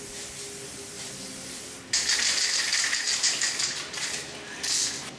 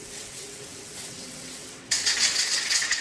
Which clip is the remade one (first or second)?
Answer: second